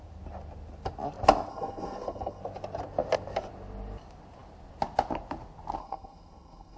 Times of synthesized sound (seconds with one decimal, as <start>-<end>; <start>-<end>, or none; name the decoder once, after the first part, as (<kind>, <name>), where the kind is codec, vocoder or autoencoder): 1.5-2.4 (codec, SNAC); 5.8-6.8